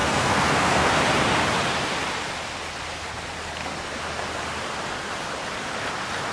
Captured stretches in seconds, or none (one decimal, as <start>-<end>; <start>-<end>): 1.0-6.3